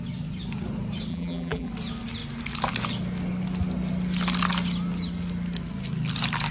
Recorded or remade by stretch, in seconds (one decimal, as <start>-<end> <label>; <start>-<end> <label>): 0.0-1.1 recorded; 1.1-1.7 remade; 1.7-6.5 recorded